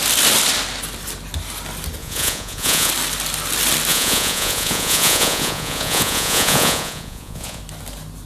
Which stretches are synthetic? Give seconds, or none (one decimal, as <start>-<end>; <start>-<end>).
2.0-2.9; 3.9-7.6